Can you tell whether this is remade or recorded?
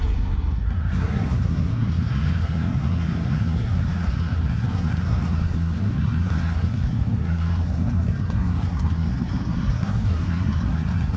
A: remade